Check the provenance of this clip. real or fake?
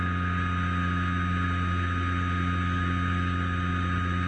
real